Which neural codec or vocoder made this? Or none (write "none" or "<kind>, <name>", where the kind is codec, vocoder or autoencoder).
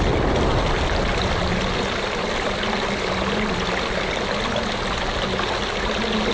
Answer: none